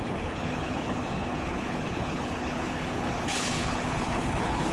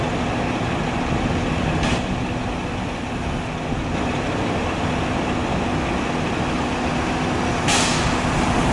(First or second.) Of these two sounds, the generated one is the first